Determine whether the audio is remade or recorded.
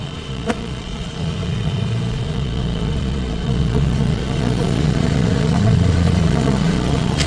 remade